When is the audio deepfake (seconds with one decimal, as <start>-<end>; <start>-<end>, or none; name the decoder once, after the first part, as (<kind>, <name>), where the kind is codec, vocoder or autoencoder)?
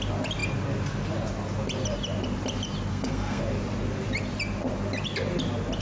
2.9-3.4 (codec, SNAC)